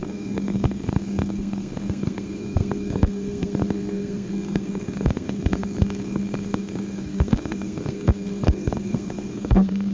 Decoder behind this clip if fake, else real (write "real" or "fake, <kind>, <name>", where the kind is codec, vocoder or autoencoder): fake, codec, SNAC